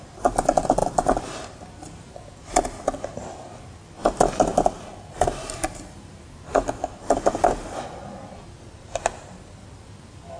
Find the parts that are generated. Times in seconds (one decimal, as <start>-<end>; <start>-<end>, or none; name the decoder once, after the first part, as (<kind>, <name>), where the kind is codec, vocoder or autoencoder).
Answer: none